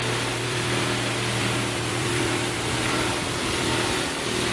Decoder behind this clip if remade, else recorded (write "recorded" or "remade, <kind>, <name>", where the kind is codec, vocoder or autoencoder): remade, vocoder, BigVGAN v2